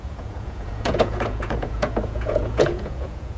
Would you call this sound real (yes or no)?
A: no